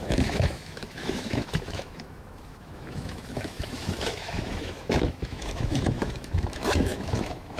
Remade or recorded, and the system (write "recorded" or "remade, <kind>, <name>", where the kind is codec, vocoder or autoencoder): remade, autoencoder, DAC-VAE